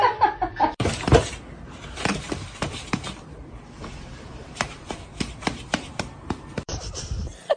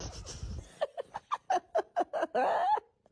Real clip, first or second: second